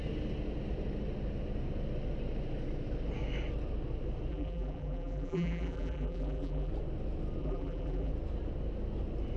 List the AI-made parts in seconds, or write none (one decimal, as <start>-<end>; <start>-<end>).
4.3-6.7; 7.4-8.1